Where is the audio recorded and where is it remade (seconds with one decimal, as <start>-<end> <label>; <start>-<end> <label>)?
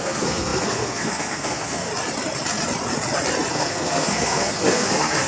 0.0-1.9 remade; 1.9-3.5 recorded; 3.5-5.3 remade